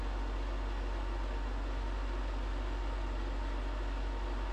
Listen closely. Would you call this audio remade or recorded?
recorded